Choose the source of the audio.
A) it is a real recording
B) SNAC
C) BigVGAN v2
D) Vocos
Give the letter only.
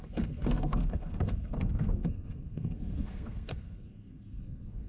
B